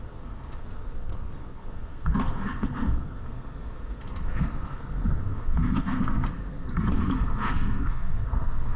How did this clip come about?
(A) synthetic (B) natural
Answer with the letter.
A